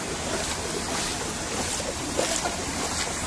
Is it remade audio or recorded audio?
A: recorded